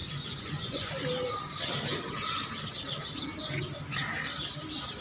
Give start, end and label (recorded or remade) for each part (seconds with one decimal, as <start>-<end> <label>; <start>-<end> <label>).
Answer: 0.0-0.9 remade; 0.9-5.0 recorded